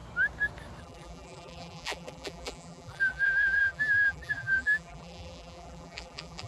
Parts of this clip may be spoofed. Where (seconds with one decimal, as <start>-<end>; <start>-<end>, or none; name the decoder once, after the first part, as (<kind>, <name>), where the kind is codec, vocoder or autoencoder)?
0.8-6.5 (vocoder, BigVGAN v2)